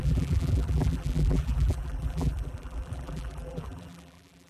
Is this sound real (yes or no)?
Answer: no